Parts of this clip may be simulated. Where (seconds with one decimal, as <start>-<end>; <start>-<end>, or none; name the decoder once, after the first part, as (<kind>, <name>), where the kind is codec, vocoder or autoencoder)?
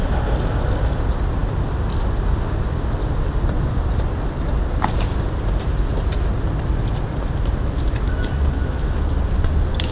none